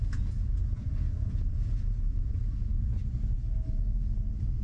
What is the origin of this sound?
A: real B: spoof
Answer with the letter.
B